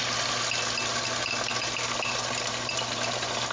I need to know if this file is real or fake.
real